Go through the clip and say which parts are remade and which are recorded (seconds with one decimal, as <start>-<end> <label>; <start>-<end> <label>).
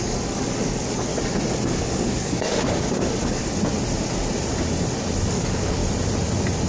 0.0-1.1 remade; 1.1-1.8 recorded; 1.8-3.4 remade; 3.4-5.3 recorded; 5.3-5.8 remade; 5.8-6.7 recorded